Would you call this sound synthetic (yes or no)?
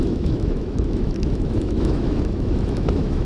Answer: yes